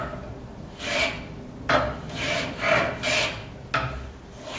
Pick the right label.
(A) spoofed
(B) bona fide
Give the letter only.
B